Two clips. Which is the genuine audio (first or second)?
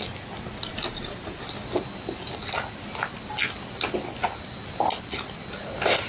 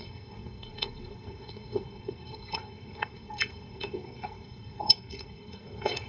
first